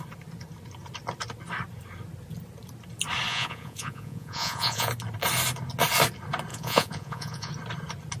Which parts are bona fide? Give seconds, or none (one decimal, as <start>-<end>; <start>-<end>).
0.0-3.3; 4.9-6.5; 7.5-8.2